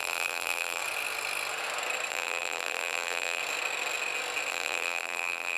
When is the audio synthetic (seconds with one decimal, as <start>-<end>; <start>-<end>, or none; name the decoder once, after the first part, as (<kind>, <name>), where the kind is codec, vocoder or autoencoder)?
0.0-0.8 (vocoder, BigVGAN v2); 2.1-3.4; 4.5-5.6

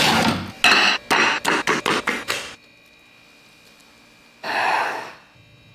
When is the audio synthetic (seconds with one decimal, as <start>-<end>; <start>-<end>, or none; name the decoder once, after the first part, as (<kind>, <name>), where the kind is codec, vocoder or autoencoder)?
none

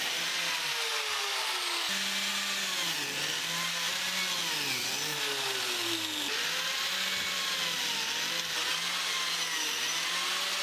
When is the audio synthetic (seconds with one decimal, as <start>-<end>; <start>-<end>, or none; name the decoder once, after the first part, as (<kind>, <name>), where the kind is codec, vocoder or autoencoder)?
4.4-5.2 (vocoder, BigVGAN v2); 8.7-9.4